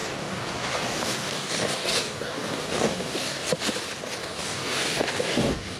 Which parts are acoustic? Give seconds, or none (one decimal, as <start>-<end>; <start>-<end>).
3.5-4.2